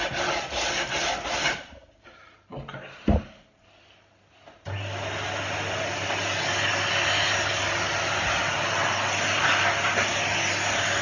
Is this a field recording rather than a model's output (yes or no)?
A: yes